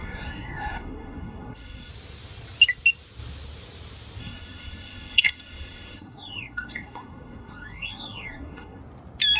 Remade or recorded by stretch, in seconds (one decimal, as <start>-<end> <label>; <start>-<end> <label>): 0.0-1.9 remade; 1.9-4.2 recorded; 4.2-8.8 remade; 8.8-9.4 recorded